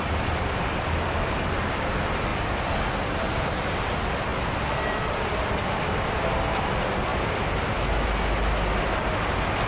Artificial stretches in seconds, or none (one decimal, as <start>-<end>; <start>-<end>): 2.3-3.9; 4.3-6.4